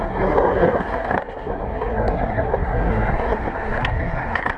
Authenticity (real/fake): fake